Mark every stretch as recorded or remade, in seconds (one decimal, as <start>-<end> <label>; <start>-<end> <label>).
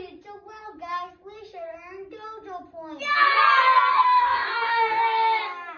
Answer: 0.0-3.9 recorded; 3.9-5.0 remade; 5.0-5.8 recorded